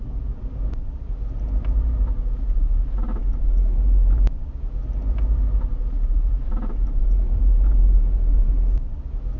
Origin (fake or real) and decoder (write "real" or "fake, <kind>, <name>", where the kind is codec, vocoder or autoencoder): fake, vocoder, BigVGAN v2